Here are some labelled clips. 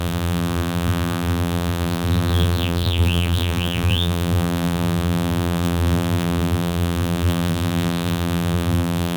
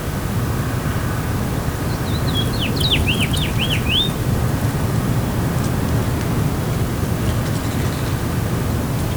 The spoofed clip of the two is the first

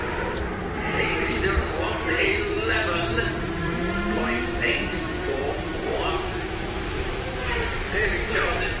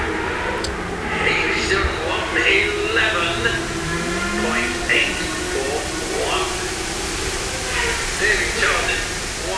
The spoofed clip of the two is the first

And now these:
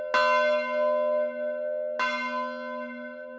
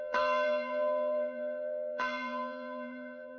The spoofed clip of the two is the second